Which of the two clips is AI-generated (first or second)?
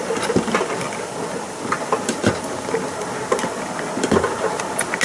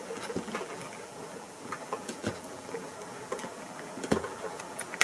second